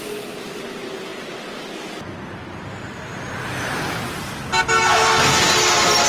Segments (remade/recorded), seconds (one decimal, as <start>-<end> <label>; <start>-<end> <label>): 0.0-6.1 recorded